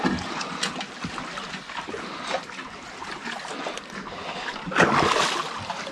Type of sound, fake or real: real